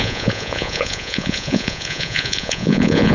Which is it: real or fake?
fake